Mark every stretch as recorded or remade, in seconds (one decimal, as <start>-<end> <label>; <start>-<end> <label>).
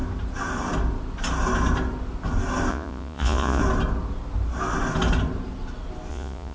0.0-2.7 recorded; 2.7-3.6 remade; 3.6-6.1 recorded; 6.1-6.5 remade